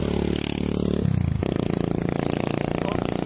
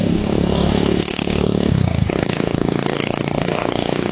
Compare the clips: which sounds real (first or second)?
first